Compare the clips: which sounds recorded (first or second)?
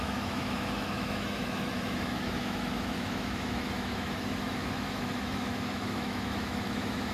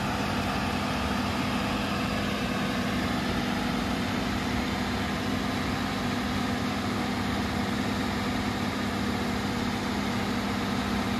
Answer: second